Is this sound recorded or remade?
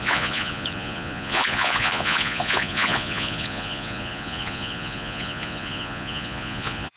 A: remade